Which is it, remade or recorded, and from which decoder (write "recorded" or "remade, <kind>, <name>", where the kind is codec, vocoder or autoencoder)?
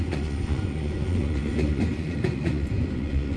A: remade, vocoder, Vocos